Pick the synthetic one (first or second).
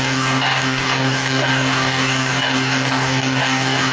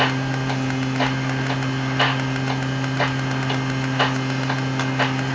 first